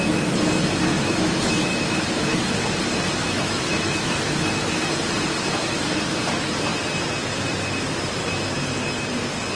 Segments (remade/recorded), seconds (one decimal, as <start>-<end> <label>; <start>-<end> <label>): 0.0-0.9 recorded; 0.9-2.5 remade; 2.5-3.2 recorded; 3.2-4.9 remade; 4.9-9.6 recorded